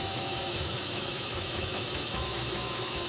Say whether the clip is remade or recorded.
remade